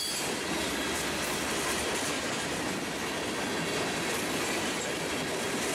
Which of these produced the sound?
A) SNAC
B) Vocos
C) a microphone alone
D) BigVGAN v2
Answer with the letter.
C